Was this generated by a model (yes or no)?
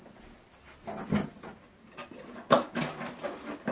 no